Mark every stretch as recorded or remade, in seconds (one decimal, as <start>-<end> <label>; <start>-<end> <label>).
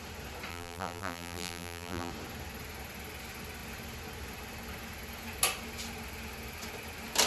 0.0-0.5 recorded; 0.5-2.1 remade; 2.1-7.3 recorded